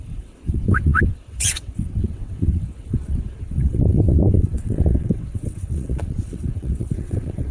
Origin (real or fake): fake